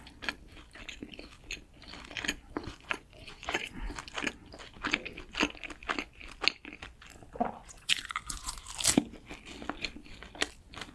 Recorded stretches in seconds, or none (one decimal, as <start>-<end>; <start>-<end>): 0.0-2.6; 3.9-7.6; 8.6-10.9